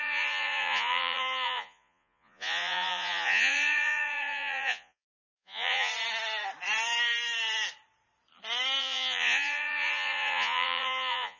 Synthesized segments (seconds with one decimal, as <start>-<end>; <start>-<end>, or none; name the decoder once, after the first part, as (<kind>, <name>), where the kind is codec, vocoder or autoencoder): 0.0-5.9 (vocoder, Vocos); 8.8-11.4